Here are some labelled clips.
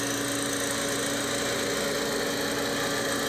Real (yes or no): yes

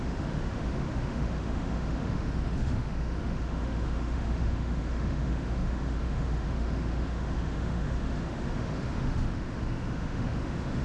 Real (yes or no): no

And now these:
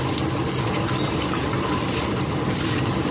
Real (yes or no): yes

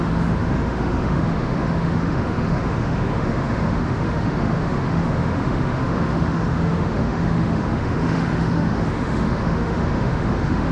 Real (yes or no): no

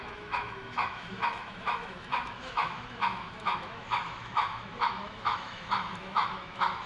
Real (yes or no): no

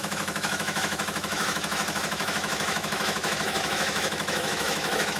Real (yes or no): no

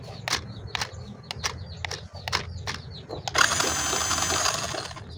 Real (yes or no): yes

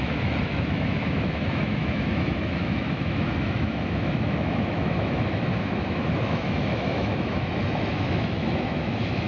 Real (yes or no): no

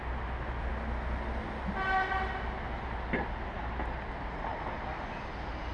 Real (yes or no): yes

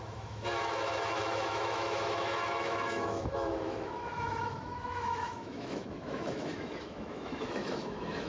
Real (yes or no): no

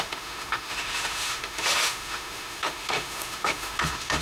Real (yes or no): no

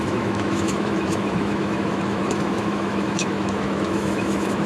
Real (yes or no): no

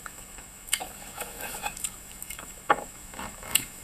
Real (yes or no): no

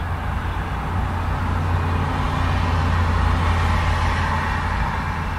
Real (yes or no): yes